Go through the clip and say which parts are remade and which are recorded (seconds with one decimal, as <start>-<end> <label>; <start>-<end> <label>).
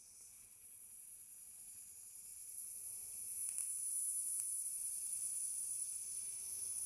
0.0-2.3 recorded; 2.3-2.8 remade; 2.8-4.6 recorded; 4.6-6.1 remade; 6.1-6.9 recorded